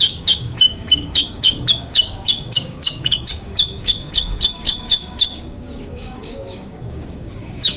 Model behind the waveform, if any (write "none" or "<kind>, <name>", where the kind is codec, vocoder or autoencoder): codec, DAC